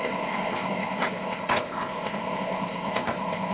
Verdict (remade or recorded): remade